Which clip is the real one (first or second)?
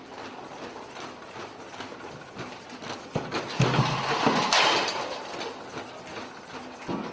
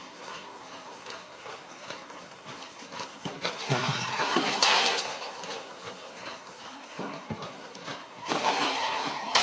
first